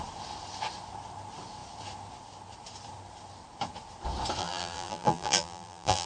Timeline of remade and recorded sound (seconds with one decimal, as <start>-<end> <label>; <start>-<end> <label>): 0.0-4.4 recorded; 4.4-6.1 remade